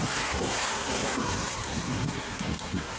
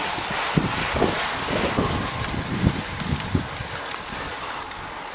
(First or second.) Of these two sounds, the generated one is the first